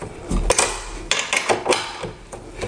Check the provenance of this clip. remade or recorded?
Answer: recorded